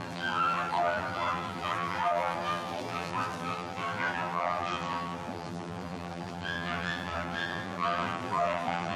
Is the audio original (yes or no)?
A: no